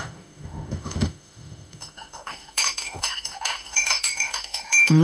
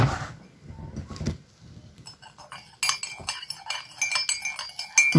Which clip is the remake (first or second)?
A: first